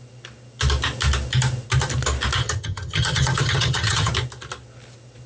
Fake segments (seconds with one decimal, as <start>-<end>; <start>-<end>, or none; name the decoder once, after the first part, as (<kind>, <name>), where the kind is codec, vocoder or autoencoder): 2.4-4.1 (vocoder, HiFi-GAN)